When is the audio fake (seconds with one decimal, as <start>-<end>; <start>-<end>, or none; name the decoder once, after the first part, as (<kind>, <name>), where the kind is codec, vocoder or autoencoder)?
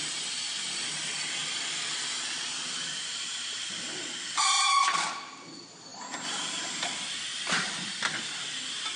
5.9-8.3 (vocoder, BigVGAN v2)